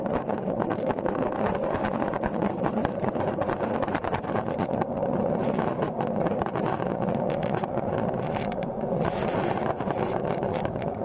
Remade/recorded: remade